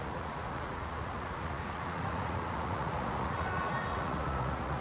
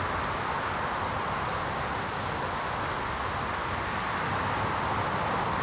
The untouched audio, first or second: second